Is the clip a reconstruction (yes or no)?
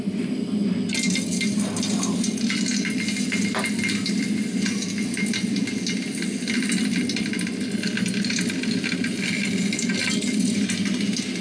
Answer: no